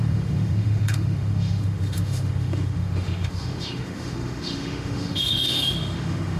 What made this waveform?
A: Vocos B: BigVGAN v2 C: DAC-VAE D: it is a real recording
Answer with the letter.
C